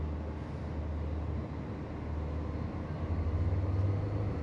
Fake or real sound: real